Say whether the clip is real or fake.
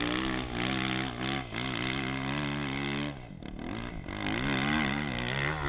real